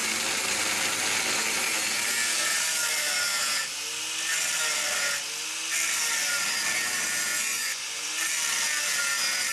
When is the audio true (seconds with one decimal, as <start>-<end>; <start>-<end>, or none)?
0.0-7.3; 8.2-9.5